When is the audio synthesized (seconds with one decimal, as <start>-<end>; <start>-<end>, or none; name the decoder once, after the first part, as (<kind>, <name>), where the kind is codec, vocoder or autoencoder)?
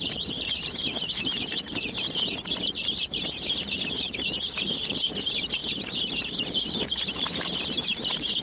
0.0-8.4 (vocoder, BigVGAN v2)